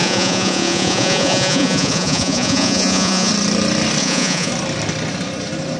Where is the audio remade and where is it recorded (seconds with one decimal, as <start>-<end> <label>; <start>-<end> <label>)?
0.0-3.3 remade; 3.3-4.0 recorded; 4.0-4.5 remade; 4.5-5.8 recorded